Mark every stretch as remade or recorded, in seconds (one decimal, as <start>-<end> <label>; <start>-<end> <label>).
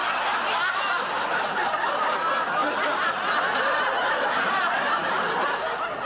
0.0-6.0 recorded